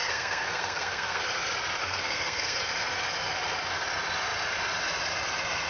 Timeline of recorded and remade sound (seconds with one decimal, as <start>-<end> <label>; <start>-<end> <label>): 0.0-1.2 remade; 1.2-1.8 recorded; 1.8-2.6 remade; 2.6-5.7 recorded